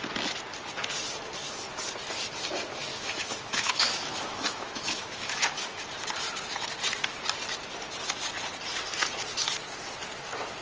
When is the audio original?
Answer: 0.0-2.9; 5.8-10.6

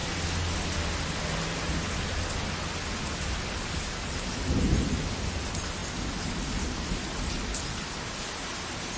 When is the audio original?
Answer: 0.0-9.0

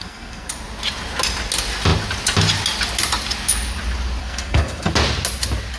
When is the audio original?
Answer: 0.5-4.2; 4.9-5.8

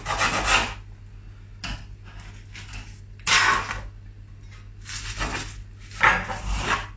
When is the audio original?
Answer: 0.0-7.0